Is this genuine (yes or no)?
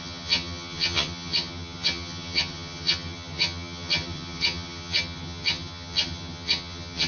no